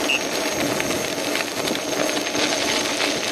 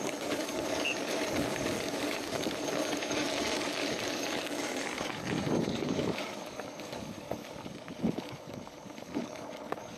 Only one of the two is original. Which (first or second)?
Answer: first